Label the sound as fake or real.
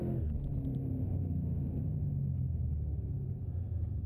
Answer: real